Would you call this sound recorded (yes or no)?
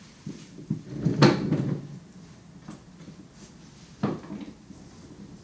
yes